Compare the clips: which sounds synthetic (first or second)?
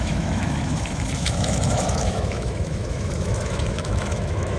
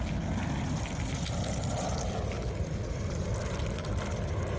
first